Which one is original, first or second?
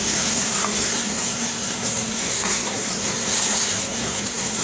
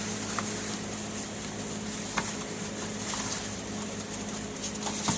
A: second